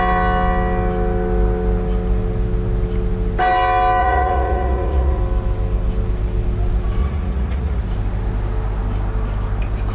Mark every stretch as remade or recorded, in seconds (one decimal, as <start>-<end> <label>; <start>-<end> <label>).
0.0-4.0 recorded; 4.0-5.2 remade; 5.2-7.0 recorded; 7.0-7.8 remade; 7.8-9.9 recorded